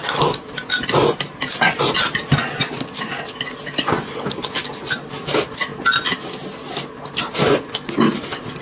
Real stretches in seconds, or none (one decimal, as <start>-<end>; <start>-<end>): 0.0-8.6